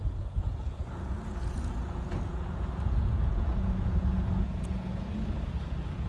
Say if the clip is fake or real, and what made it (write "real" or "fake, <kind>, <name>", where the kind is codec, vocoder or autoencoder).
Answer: fake, vocoder, Vocos